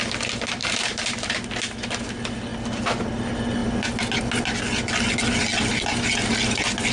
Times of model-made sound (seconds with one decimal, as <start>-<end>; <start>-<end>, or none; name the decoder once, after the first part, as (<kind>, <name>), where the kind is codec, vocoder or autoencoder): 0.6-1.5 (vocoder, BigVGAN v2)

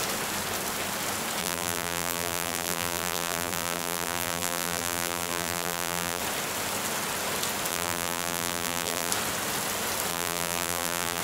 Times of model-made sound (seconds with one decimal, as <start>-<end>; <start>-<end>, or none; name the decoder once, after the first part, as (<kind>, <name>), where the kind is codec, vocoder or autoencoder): 1.4-6.2 (vocoder, BigVGAN v2); 7.7-9.1; 10.1-11.2

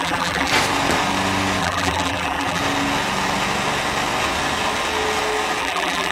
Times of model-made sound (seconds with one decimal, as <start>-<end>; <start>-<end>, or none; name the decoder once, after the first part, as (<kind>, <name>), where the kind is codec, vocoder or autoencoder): 0.0-0.5 (vocoder, BigVGAN v2); 1.6-2.6; 5.6-6.1